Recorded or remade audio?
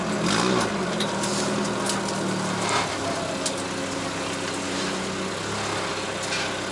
recorded